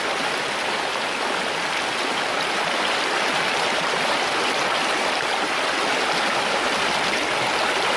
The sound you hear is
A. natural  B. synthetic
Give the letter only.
A